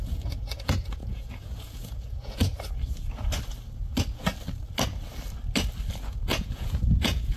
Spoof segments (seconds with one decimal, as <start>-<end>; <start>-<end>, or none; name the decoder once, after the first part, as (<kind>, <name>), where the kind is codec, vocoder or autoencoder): 0.0-2.5 (vocoder, Vocos); 6.0-7.4